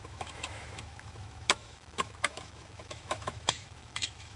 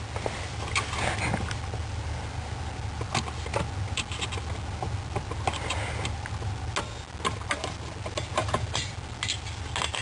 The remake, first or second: first